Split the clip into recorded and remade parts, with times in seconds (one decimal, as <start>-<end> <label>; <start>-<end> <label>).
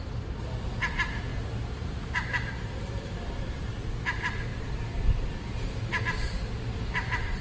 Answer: 0.0-1.3 recorded; 1.3-3.5 remade; 3.5-7.4 recorded